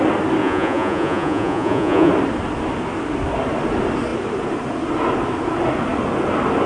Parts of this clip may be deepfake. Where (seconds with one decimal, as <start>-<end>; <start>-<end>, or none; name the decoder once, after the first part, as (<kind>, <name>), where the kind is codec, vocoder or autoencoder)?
0.4-2.1 (vocoder, Vocos)